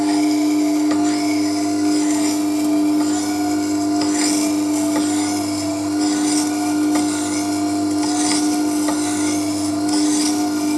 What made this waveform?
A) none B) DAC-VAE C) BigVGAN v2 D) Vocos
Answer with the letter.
A